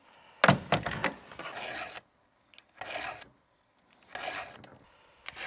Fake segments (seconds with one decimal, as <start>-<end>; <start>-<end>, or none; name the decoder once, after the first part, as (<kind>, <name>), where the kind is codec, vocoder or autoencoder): none